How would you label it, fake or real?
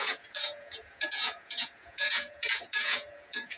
fake